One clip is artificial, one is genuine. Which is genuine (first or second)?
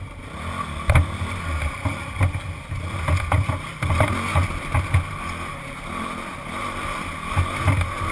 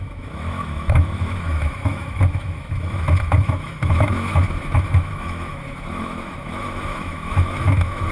first